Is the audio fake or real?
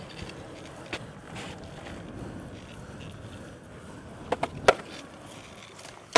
real